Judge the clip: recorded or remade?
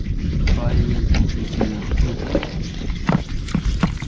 recorded